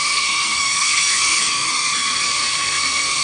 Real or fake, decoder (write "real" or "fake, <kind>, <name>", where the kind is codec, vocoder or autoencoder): fake, codec, SNAC